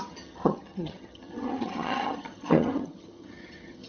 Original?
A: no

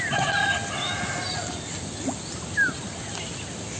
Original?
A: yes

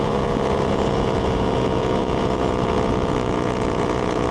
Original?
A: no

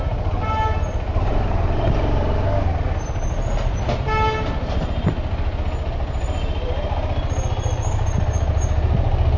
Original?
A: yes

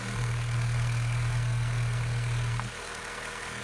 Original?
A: no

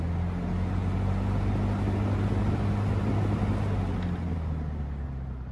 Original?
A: yes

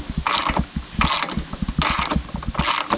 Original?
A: yes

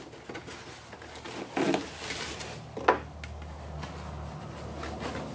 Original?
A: yes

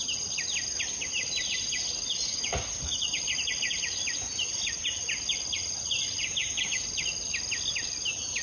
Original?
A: yes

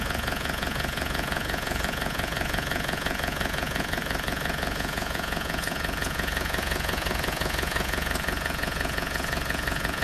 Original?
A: no